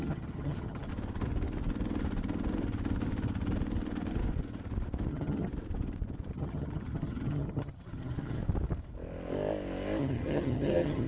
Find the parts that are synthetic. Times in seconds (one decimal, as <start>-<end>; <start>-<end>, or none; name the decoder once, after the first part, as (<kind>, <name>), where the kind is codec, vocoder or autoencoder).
0.0-0.9 (vocoder, HiFi-GAN); 5.1-5.5; 6.3-8.4; 10.0-11.1